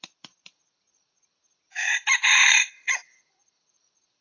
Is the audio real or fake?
fake